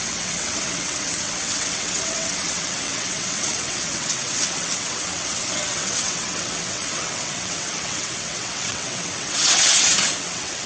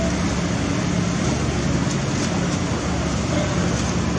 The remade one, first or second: first